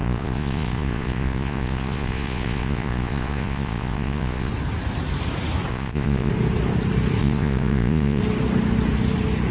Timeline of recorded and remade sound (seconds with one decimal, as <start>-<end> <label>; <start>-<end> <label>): 0.0-4.5 remade; 4.5-5.7 recorded; 5.7-6.3 remade; 6.3-7.2 recorded; 7.2-8.2 remade; 8.2-9.5 recorded